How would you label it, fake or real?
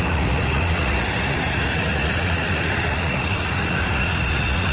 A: fake